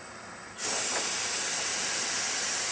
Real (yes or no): yes